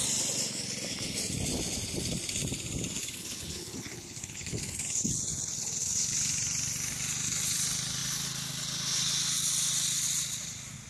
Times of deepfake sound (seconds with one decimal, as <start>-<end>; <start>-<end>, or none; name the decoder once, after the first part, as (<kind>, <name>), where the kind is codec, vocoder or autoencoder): 3.0-6.2 (codec, HILCodec)